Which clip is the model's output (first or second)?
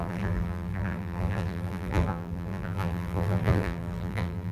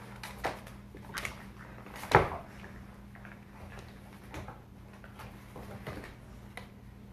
first